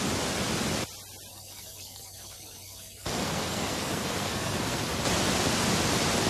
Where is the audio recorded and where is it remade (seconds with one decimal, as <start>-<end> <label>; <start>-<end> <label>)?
0.0-1.3 recorded; 1.3-4.8 remade; 4.8-6.3 recorded